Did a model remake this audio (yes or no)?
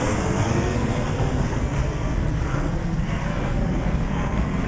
yes